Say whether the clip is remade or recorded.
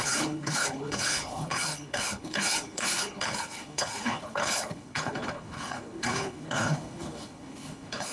remade